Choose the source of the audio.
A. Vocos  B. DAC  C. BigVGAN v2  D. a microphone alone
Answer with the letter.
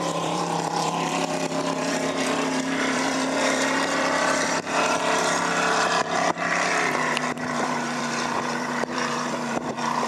C